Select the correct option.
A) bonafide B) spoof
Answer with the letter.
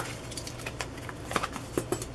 A